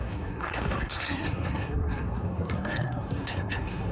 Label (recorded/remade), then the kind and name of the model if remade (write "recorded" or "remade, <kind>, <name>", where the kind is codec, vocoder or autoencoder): remade, codec, SNAC